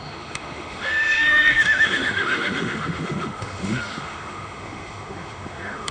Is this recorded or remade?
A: remade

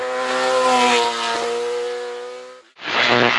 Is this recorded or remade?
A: recorded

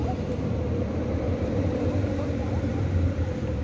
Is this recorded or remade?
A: remade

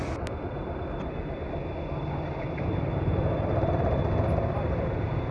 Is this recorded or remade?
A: recorded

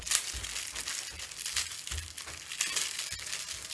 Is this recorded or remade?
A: recorded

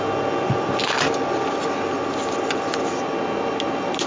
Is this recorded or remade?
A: recorded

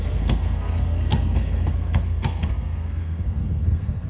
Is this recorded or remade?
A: remade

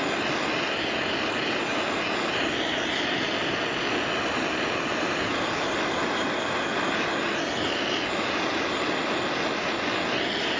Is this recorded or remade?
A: recorded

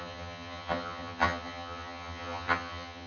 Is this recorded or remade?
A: remade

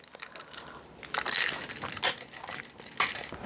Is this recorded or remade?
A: recorded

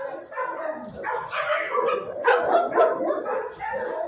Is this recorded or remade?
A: recorded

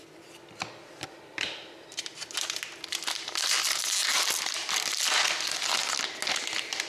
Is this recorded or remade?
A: recorded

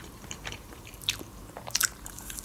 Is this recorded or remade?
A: remade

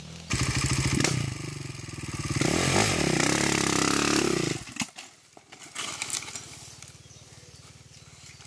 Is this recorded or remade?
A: recorded